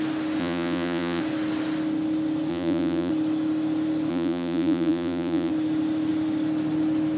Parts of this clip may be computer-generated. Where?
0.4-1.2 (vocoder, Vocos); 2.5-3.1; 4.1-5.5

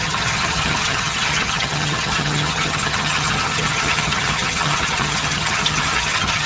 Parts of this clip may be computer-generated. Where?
0.0-6.5 (vocoder, HiFi-GAN)

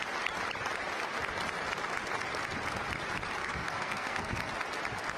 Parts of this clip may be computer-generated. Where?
3.4-4.5 (codec, SNAC)

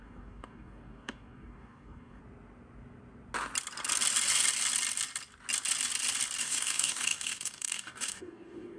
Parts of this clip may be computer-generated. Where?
0.0-2.2 (codec, DAC); 6.4-8.8

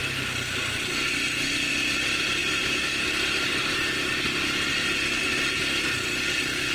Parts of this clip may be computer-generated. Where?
none

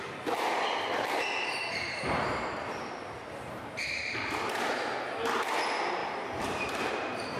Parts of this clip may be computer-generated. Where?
1.2-4.7 (vocoder, BigVGAN v2); 6.0-6.9

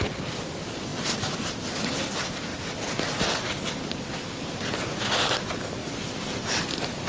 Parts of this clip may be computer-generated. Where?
2.5-4.5 (vocoder, BigVGAN v2)

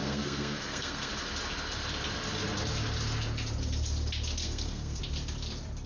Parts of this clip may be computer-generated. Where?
0.0-1.1 (codec, SNAC); 4.4-5.0